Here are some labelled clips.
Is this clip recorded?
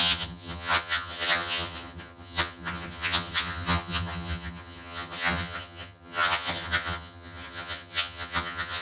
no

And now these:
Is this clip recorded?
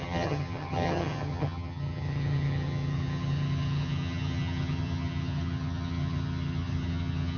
no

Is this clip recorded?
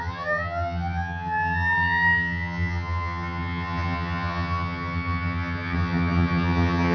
no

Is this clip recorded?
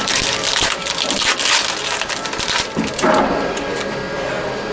yes